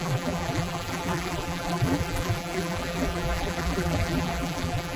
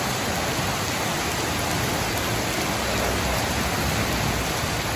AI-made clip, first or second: first